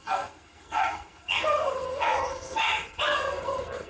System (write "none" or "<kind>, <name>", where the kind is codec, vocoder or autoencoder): codec, SNAC